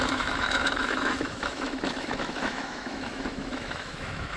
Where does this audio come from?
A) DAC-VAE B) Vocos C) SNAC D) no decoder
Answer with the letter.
A